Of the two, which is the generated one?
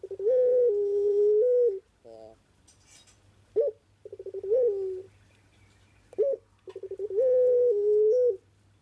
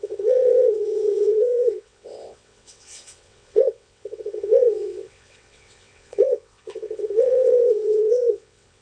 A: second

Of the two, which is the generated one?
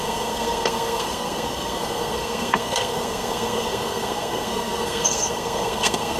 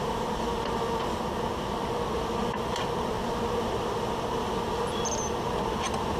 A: first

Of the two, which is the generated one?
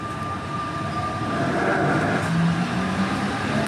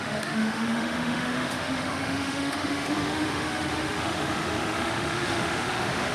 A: second